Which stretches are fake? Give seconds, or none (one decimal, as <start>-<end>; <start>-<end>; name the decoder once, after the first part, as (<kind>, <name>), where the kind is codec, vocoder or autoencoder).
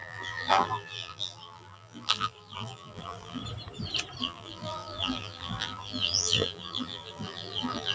0.0-3.4 (vocoder, BigVGAN v2); 4.2-7.9